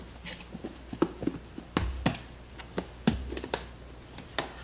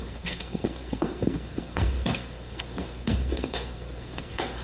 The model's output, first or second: second